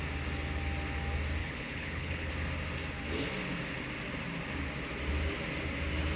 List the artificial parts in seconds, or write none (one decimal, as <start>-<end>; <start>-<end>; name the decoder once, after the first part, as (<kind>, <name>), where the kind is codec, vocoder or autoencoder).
1.4-2.3 (codec, HILCodec)